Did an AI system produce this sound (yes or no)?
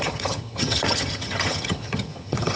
yes